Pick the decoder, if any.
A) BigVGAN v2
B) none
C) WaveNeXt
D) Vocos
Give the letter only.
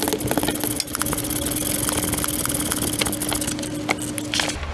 B